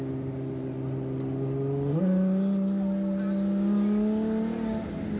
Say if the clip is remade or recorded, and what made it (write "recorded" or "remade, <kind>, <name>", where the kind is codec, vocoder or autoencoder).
recorded